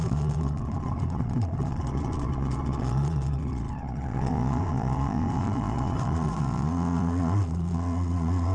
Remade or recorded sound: remade